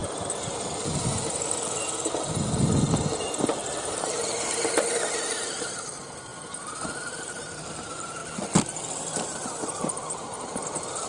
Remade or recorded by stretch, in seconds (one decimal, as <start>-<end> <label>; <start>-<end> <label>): 0.0-3.8 recorded; 3.8-4.3 remade; 4.3-5.5 recorded; 5.5-8.2 remade; 8.2-9.0 recorded; 9.0-11.1 remade